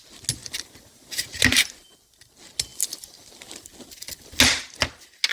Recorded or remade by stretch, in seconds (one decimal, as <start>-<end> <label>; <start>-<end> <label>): 0.0-5.3 recorded